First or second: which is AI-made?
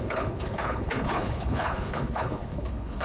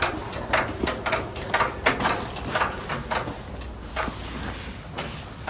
first